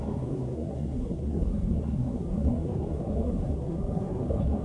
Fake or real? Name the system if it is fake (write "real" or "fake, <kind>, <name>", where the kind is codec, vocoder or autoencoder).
fake, codec, SNAC